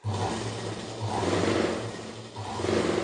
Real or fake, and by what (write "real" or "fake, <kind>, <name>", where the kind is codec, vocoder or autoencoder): real